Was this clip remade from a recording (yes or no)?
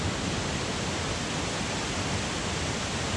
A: no